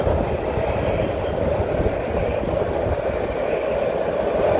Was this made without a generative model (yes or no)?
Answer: yes